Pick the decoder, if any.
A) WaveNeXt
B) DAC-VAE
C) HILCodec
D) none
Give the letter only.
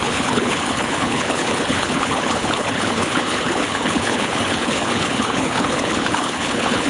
C